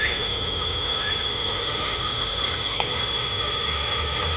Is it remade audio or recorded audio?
remade